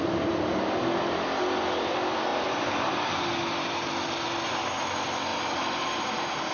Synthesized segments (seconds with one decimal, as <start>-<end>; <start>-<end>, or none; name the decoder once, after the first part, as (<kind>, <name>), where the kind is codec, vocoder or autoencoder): 2.3-3.2 (vocoder, BigVGAN v2); 5.3-6.5